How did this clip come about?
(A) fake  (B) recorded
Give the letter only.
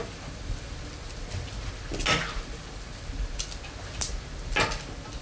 B